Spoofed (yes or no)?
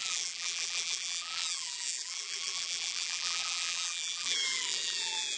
yes